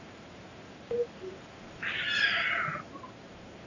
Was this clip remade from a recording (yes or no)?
yes